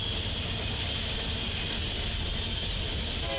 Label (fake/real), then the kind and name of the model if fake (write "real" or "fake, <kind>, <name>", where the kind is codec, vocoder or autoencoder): real